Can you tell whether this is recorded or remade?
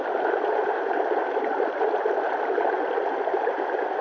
recorded